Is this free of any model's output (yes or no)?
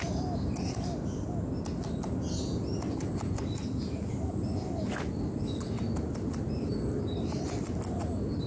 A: yes